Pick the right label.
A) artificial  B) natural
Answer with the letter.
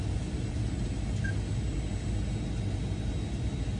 B